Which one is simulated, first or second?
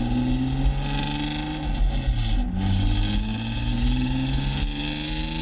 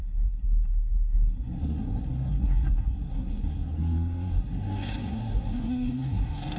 second